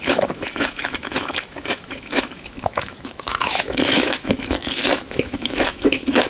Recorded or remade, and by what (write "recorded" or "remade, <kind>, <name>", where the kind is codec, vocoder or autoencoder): remade, autoencoder, DAC-VAE